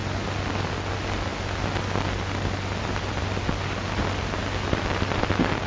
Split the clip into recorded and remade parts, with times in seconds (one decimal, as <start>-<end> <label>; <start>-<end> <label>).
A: 0.0-5.7 recorded